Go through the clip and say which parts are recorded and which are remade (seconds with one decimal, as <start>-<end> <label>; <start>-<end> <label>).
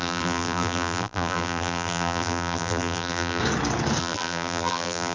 0.0-3.4 remade; 3.4-4.0 recorded; 4.0-5.1 remade